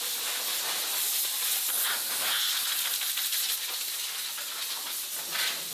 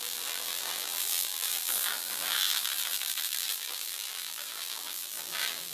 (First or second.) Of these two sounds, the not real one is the second